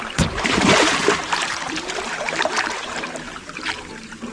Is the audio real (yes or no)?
no